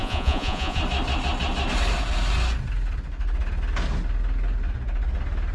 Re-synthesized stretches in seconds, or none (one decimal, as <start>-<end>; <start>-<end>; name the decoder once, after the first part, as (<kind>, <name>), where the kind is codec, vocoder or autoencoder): 0.0-0.8 (vocoder, Vocos)